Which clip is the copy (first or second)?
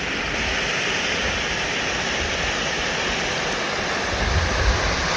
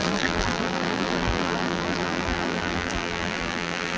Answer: second